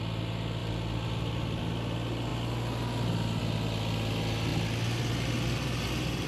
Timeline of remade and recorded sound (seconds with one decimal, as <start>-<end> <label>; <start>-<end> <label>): 0.0-6.3 recorded